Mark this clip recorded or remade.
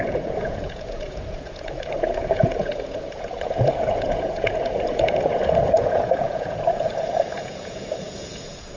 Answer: remade